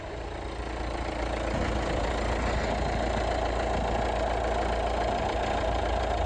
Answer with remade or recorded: recorded